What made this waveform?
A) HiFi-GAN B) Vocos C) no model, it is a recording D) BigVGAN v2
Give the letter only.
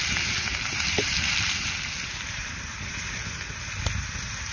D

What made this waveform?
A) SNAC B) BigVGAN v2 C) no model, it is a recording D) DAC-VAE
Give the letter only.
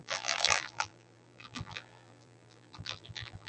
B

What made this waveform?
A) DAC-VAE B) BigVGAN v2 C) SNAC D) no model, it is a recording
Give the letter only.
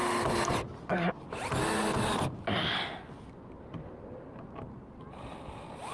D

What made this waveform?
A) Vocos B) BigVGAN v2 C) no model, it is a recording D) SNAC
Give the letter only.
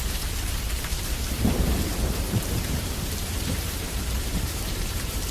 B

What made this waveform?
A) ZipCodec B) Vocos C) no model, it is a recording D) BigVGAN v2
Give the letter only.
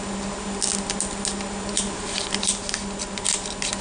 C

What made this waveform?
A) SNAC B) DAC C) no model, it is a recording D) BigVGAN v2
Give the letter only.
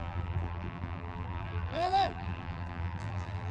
D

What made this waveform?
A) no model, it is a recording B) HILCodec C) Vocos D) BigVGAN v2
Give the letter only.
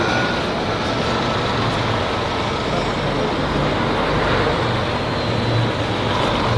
A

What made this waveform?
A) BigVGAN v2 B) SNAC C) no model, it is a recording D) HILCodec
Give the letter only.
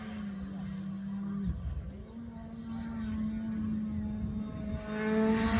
C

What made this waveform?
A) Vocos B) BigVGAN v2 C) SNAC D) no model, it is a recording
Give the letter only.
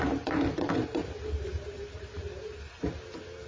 B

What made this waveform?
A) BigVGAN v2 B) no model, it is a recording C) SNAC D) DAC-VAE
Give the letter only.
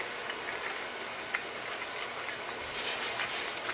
B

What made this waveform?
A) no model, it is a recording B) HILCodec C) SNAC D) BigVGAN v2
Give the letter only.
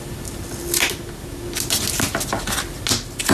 A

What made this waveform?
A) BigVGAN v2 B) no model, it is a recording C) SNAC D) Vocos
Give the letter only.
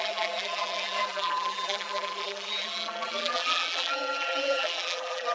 A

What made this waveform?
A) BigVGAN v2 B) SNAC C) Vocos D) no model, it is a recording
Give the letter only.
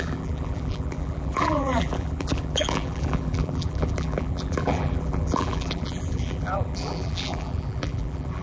A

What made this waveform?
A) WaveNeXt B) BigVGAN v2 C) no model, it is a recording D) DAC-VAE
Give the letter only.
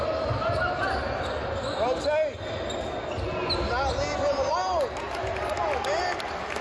C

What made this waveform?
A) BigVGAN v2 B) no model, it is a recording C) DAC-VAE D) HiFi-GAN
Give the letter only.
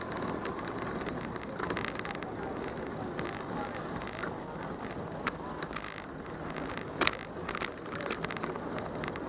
B